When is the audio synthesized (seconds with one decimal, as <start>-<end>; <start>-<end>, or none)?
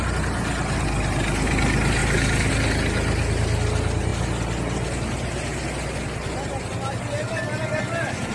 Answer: none